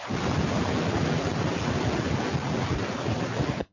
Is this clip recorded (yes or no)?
yes